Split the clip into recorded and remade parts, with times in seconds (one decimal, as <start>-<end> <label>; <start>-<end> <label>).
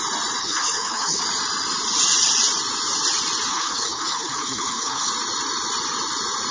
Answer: 0.0-0.4 recorded; 0.4-1.2 remade; 1.2-3.5 recorded; 3.5-5.1 remade; 5.1-6.5 recorded